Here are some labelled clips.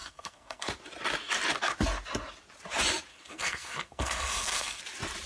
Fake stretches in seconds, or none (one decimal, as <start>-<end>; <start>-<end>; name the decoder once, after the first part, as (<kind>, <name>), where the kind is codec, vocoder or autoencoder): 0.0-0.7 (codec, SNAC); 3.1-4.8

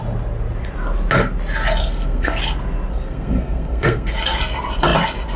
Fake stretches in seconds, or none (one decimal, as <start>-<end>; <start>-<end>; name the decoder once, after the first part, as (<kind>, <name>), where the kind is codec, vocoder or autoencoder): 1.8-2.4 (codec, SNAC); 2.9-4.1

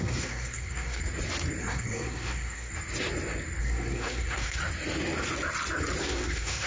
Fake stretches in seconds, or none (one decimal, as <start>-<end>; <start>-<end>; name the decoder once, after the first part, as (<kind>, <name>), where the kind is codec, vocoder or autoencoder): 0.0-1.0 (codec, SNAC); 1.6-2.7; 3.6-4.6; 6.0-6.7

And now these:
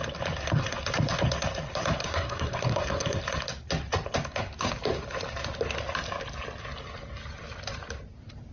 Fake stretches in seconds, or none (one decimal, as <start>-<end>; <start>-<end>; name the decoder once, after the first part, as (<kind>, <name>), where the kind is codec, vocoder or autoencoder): 2.0-3.2 (codec, SNAC)

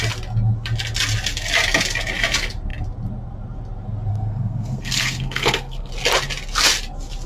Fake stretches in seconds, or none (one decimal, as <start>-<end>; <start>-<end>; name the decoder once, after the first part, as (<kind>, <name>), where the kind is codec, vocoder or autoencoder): 4.1-5.9 (codec, SNAC)

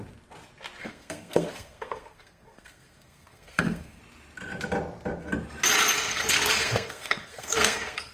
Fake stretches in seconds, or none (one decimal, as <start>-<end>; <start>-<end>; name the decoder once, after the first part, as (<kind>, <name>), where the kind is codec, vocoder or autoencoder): 0.8-4.0 (codec, SNAC); 6.1-8.1

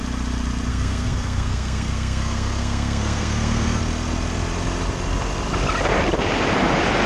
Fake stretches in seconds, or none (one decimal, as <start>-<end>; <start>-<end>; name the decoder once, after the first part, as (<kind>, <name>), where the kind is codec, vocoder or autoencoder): 0.7-3.8 (codec, SNAC)

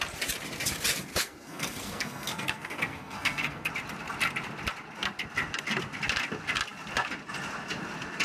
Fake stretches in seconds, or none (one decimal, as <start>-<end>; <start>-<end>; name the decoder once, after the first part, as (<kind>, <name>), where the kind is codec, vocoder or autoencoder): 1.1-3.7 (codec, SNAC)